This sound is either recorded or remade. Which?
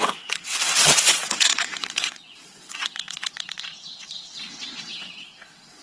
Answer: remade